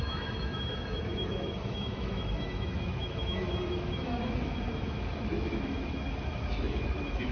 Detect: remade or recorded remade